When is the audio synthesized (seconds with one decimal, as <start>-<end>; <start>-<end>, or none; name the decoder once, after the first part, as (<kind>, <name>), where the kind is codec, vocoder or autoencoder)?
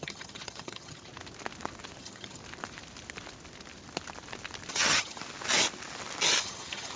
0.0-1.1 (vocoder, HiFi-GAN); 2.0-2.4; 4.7-5.2; 6.4-7.0